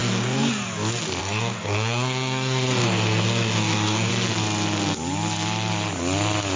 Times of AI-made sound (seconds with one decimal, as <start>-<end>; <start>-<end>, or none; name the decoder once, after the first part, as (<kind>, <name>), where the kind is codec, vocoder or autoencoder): 0.0-0.5 (codec, SNAC); 1.2-4.1